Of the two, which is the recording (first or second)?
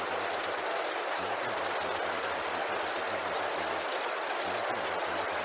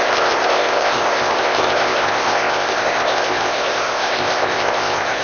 first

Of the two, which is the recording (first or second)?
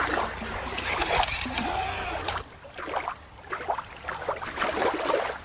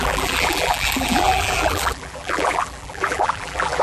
first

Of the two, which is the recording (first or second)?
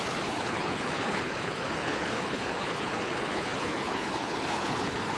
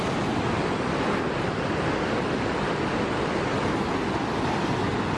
second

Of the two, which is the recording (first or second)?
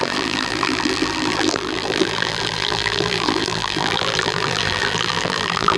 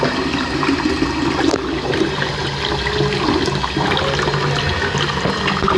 second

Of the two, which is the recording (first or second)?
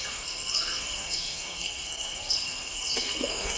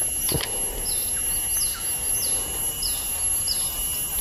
second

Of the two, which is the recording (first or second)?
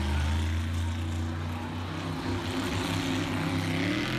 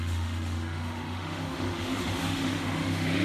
first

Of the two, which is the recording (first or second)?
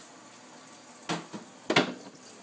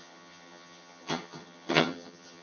first